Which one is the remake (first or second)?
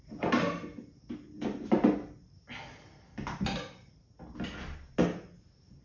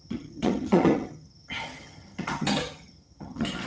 second